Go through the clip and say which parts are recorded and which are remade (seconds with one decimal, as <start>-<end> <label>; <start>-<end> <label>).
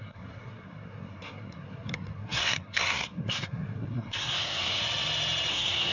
0.0-4.8 remade; 4.8-5.5 recorded; 5.5-5.9 remade